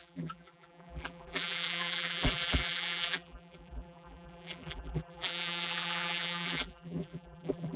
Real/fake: fake